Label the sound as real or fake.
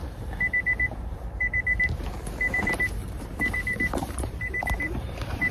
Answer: fake